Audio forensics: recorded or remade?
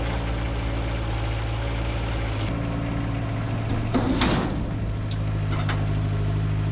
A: recorded